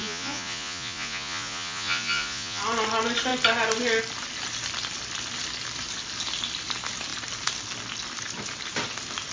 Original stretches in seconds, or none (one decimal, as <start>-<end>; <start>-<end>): 2.6-9.3